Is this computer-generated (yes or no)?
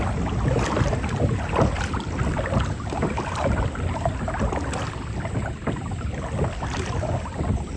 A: no